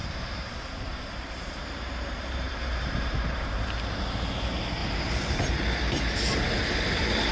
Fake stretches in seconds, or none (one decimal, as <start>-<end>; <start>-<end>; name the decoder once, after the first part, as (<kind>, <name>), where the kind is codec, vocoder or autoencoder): 0.0-4.0 (vocoder, BigVGAN v2); 4.8-5.5